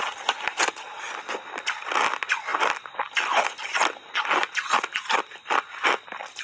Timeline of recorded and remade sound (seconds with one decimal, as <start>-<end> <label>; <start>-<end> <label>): 0.0-6.4 recorded